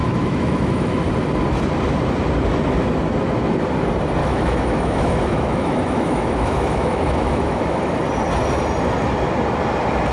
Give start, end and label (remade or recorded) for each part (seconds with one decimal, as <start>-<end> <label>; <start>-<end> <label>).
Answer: 0.0-1.0 remade; 1.0-4.2 recorded; 4.2-8.0 remade; 8.0-10.1 recorded